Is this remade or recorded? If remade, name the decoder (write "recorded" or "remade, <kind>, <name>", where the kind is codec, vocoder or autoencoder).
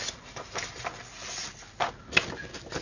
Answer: recorded